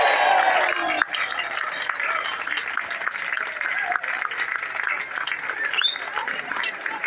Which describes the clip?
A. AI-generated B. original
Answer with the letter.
B